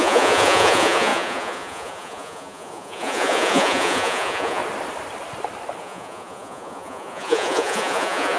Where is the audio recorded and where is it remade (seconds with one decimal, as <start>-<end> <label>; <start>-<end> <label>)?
0.0-4.6 remade; 4.6-5.8 recorded; 5.8-8.4 remade